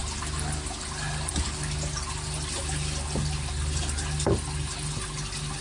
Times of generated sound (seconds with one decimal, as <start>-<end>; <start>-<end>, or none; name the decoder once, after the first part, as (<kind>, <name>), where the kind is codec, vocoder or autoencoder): none